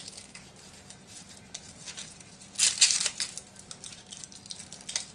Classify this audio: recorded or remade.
recorded